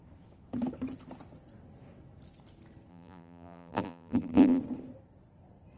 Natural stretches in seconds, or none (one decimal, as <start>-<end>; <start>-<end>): 0.0-2.9; 4.6-5.8